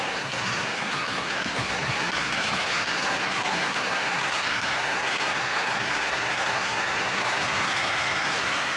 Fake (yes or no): yes